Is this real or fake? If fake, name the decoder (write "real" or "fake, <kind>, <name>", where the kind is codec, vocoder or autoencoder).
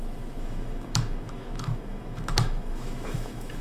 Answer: fake, autoencoder, DAC-VAE